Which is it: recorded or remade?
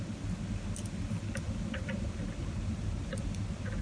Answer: recorded